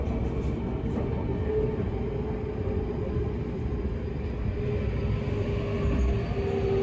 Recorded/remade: recorded